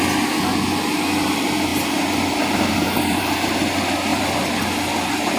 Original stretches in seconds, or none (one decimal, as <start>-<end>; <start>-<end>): 0.0-1.7; 3.2-4.1; 4.9-5.4